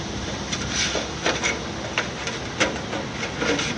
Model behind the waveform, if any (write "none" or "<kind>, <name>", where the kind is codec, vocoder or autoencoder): none